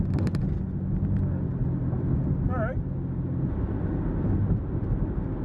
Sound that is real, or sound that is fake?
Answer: real